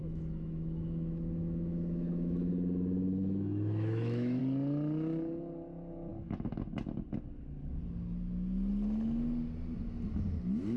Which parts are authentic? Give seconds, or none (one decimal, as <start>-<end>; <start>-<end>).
2.5-3.2; 4.4-10.8